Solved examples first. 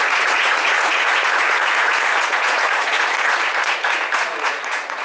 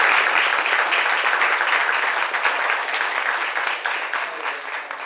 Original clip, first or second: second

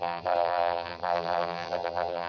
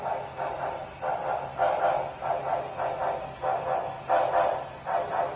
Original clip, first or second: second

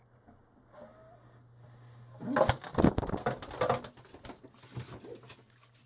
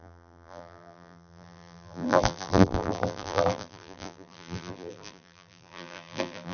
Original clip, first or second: first